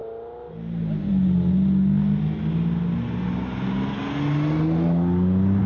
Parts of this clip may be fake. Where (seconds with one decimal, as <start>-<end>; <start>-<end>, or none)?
none